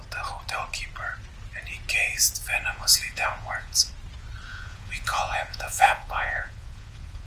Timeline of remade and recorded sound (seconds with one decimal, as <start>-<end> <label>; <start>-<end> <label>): 0.0-2.7 recorded; 2.7-3.9 remade; 3.9-4.5 recorded; 4.5-7.3 remade